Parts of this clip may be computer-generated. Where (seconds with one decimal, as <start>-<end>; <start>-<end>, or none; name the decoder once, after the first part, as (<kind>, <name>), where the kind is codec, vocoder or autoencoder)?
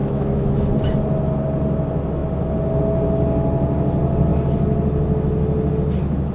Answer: 0.0-0.7 (autoencoder, DAC-VAE)